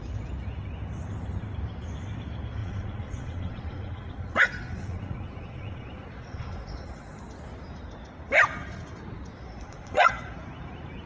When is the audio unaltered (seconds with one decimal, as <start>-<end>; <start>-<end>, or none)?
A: 0.0-2.6; 7.2-9.3; 10.1-11.1